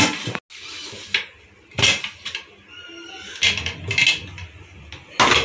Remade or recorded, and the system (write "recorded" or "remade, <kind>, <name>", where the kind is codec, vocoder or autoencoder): recorded